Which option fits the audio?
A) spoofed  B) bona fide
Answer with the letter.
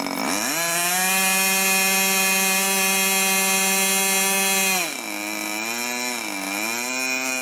B